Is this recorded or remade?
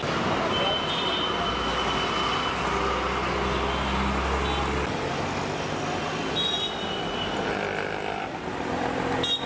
recorded